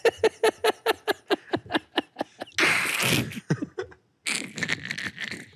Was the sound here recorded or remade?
recorded